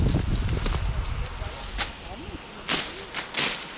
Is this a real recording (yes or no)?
yes